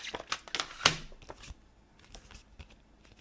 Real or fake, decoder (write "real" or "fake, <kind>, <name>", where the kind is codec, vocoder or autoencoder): real